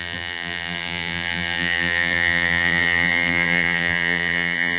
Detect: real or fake fake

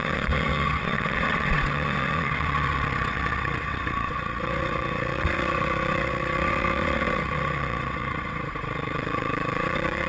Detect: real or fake fake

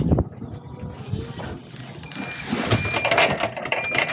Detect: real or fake real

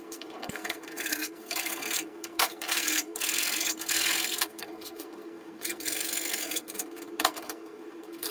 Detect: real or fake fake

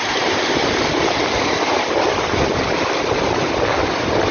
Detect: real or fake fake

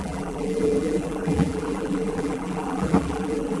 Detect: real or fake fake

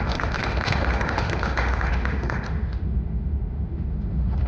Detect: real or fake fake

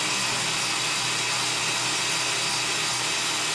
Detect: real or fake real